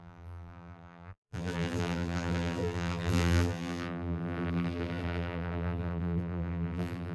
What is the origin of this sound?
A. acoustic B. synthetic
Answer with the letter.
B